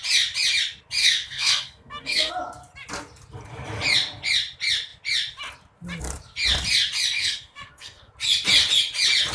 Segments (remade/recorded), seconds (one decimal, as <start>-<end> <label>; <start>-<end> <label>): 0.0-1.0 recorded; 1.0-2.3 remade; 2.3-7.2 recorded; 7.2-8.1 remade; 8.1-9.3 recorded